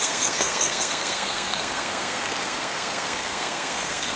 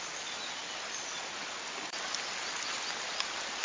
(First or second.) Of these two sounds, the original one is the second